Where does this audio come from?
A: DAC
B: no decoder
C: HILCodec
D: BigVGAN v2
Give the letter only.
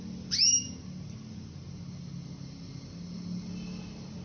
B